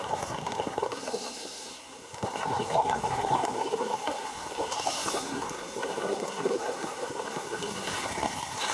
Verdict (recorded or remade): remade